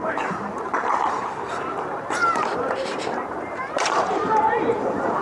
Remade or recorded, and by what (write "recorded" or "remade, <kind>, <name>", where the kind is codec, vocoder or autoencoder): remade, vocoder, BigVGAN v2